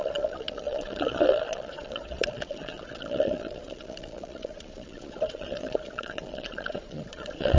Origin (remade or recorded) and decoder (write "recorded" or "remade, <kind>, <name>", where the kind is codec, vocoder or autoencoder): remade, vocoder, Vocos